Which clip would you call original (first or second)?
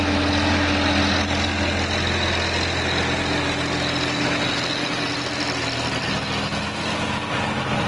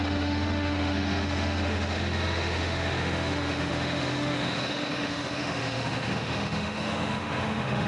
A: first